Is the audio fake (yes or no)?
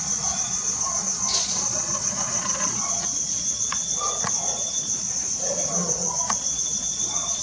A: yes